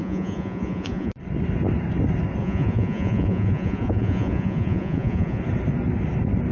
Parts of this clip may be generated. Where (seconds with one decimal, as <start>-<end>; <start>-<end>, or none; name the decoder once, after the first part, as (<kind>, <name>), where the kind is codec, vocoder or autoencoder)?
0.0-1.1 (vocoder, Vocos); 2.4-5.4